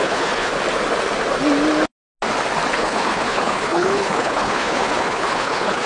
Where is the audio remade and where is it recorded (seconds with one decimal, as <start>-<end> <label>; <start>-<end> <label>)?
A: 0.0-0.5 remade; 0.5-2.7 recorded; 2.7-5.9 remade